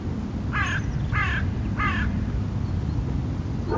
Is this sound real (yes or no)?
yes